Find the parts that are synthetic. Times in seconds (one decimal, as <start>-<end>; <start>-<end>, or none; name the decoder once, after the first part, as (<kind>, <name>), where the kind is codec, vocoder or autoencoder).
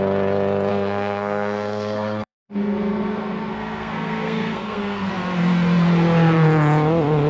0.7-5.1 (codec, SNAC)